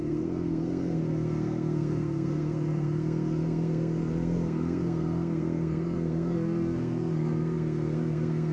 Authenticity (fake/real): fake